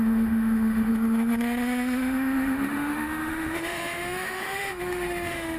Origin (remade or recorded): remade